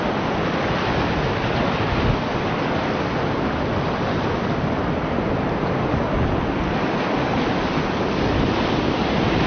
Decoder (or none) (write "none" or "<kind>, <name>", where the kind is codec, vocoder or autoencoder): none